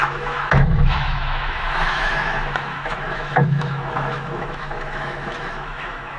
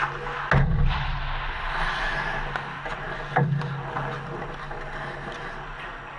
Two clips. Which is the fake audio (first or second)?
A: first